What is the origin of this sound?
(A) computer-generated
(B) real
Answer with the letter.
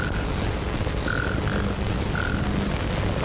B